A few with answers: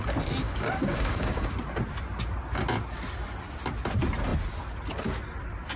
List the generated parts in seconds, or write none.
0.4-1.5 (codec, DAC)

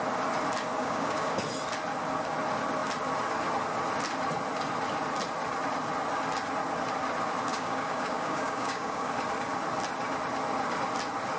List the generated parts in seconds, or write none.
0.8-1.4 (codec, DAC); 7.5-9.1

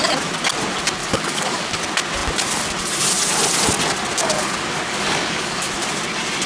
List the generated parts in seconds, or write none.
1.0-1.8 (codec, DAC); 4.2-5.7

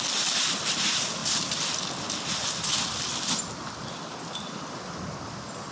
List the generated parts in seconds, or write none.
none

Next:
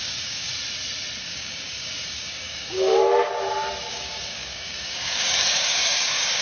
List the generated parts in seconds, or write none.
0.0-0.5 (codec, DAC); 1.2-3.0; 3.9-6.4